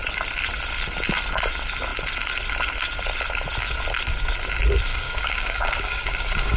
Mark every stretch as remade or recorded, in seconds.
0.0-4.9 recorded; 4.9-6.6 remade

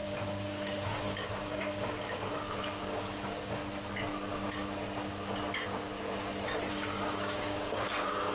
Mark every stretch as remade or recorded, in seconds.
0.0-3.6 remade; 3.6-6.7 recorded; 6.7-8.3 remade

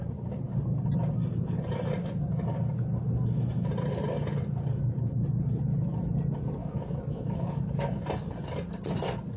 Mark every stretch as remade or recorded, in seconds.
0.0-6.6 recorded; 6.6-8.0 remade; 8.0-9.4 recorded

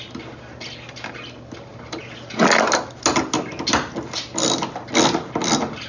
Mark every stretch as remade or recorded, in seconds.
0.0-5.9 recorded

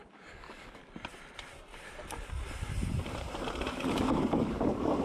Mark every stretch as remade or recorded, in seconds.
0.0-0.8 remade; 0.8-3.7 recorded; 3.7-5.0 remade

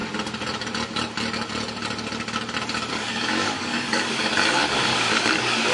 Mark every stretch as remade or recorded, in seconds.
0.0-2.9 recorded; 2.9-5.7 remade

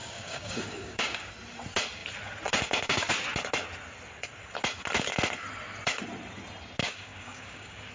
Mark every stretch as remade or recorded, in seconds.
0.0-1.3 remade; 1.3-6.8 recorded; 6.8-7.9 remade

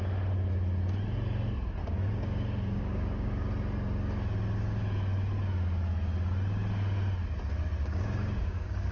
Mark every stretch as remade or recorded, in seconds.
0.0-1.8 recorded; 1.8-3.5 remade; 3.5-7.8 recorded; 7.8-8.9 remade